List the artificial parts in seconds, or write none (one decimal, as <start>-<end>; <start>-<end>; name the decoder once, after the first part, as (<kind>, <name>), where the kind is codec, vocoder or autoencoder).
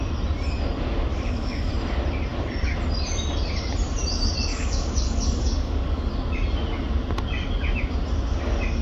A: 1.1-1.7 (codec, DAC); 4.5-6.1